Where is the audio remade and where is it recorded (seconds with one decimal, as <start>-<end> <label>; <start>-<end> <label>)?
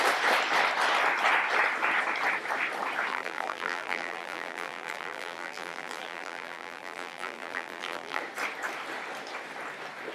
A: 0.0-3.1 recorded; 3.1-8.2 remade; 8.2-10.1 recorded